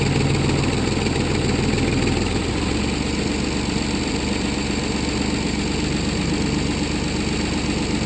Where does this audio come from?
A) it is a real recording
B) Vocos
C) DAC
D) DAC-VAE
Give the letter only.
A